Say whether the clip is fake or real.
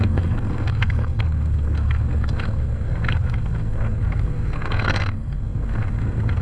fake